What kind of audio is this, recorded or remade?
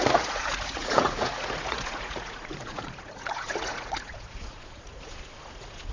remade